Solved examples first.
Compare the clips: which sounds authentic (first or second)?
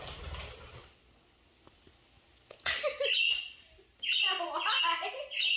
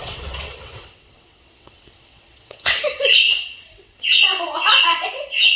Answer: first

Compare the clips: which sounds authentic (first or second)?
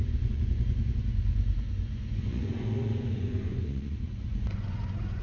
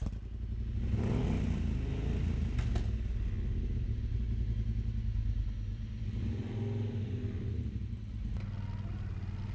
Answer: second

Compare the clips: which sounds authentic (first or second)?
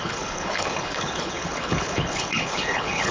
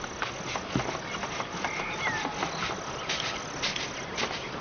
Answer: second